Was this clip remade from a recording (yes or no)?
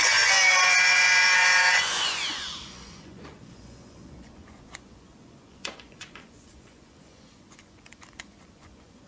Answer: yes